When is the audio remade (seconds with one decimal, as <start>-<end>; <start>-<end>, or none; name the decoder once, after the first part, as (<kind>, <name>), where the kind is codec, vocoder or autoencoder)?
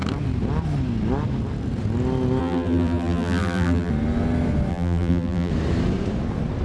2.4-3.9 (vocoder, BigVGAN v2); 4.7-5.5